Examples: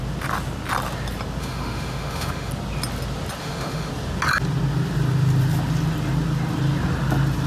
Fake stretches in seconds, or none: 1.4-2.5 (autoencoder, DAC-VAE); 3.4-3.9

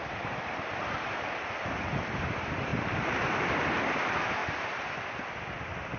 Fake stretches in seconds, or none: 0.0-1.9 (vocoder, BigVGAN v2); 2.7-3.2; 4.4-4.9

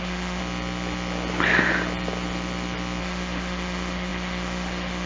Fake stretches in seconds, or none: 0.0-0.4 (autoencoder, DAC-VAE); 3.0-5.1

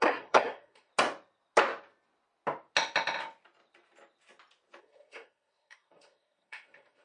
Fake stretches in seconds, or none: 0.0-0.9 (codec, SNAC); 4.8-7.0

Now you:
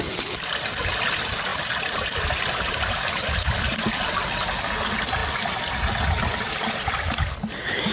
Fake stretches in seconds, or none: none